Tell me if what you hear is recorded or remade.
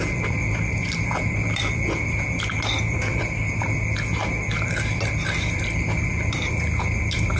remade